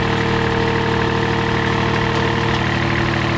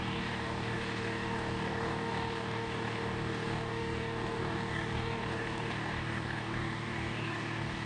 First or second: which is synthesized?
second